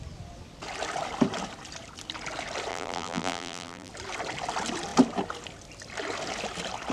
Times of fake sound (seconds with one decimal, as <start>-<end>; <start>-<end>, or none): 2.7-3.9